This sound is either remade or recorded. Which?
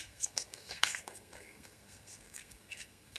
remade